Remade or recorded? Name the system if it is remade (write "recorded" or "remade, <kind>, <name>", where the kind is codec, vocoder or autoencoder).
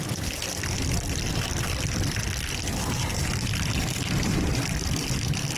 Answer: remade, vocoder, BigVGAN v2